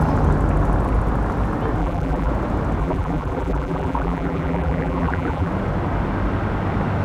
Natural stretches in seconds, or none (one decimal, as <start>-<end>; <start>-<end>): 0.0-1.8; 2.3-2.8; 5.5-7.0